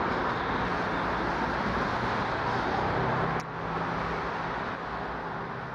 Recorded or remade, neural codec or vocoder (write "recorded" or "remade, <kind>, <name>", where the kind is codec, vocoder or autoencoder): recorded